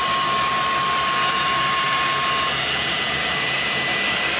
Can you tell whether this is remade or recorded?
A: recorded